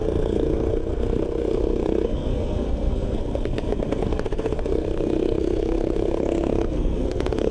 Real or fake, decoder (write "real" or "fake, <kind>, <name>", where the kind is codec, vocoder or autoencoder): fake, codec, SNAC